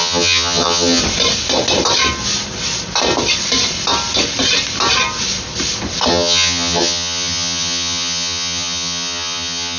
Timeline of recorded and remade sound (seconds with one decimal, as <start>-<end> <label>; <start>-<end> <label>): 0.0-1.0 remade; 1.0-6.1 recorded; 6.1-9.8 remade